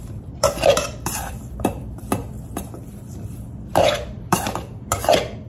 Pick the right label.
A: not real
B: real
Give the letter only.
A